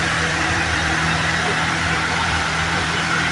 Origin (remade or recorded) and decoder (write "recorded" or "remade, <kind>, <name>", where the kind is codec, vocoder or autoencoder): remade, vocoder, BigVGAN v2